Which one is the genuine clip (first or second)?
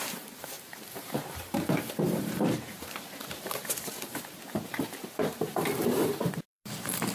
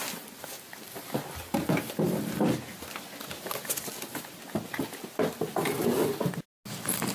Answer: second